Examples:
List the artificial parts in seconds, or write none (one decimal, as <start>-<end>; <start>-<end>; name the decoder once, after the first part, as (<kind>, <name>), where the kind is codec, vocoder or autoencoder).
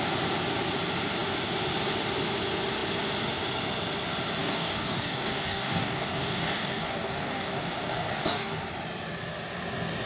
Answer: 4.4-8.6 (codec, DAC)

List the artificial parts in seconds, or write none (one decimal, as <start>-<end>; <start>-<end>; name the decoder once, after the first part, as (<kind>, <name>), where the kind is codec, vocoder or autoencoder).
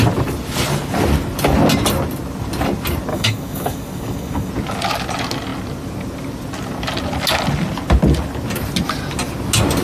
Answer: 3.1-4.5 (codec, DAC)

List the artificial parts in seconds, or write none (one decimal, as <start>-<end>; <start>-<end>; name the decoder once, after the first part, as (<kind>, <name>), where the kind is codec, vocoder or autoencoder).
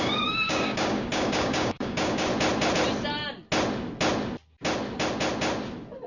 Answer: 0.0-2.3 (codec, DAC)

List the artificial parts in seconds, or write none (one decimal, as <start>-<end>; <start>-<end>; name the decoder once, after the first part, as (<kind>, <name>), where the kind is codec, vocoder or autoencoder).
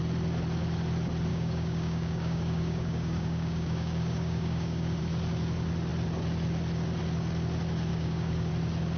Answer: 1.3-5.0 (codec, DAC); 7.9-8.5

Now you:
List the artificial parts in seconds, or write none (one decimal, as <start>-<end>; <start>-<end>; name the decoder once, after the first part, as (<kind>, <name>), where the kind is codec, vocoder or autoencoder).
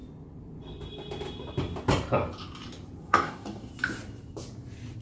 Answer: 3.0-3.7 (codec, DAC)